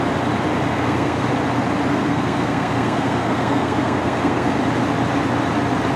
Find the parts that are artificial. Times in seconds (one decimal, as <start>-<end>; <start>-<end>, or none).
0.7-1.3; 1.9-4.6